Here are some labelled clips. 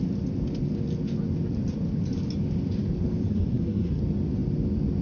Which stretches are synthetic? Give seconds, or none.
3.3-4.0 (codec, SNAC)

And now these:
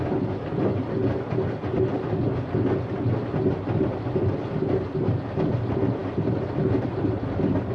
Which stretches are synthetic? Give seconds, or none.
none

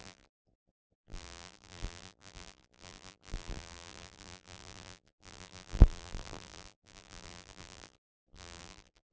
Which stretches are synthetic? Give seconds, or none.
0.0-9.1 (vocoder, BigVGAN v2)

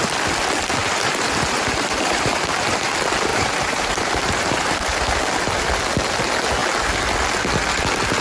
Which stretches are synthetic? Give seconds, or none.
0.8-2.9 (vocoder, BigVGAN v2); 3.3-5.2

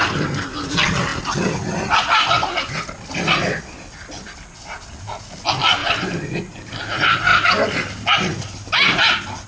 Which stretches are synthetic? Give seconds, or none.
1.1-3.6 (vocoder, BigVGAN v2); 5.8-6.8; 7.3-8.4

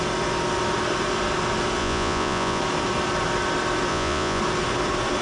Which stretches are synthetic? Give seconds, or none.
1.8-2.6 (vocoder, Vocos); 3.9-4.4

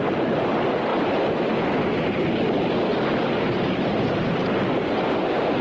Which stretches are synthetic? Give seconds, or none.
none